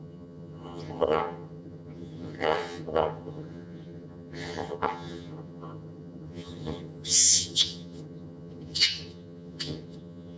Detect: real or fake fake